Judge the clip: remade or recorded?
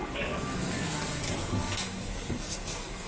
remade